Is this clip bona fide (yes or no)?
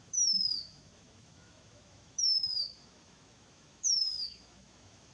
no